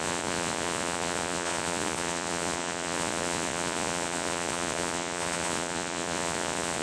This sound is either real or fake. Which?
fake